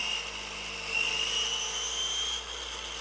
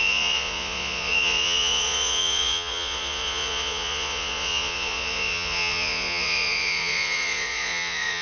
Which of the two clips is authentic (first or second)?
first